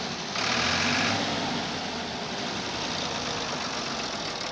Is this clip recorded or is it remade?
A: recorded